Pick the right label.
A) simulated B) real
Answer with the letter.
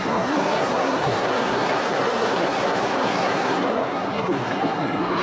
A